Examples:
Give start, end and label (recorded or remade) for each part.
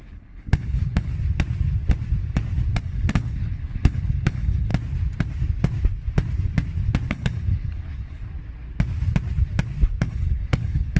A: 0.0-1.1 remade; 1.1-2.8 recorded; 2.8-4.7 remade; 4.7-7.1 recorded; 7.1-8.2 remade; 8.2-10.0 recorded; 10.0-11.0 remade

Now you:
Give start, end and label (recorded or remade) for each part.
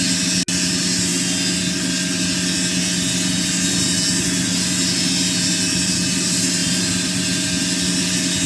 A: 0.0-6.6 recorded; 6.6-7.2 remade; 7.2-8.5 recorded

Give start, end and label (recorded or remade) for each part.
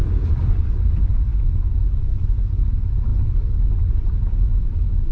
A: 0.0-0.6 remade; 0.6-5.1 recorded